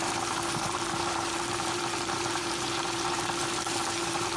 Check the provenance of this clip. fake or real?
fake